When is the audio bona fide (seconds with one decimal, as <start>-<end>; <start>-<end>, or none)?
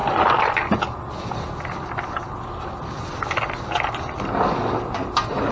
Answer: 0.0-5.5